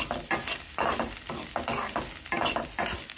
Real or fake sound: real